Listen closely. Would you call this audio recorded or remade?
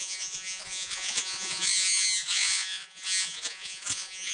remade